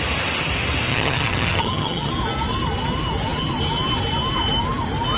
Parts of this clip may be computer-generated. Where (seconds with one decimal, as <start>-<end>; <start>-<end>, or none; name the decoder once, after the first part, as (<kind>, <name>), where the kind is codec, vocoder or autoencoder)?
0.9-2.1 (vocoder, HiFi-GAN)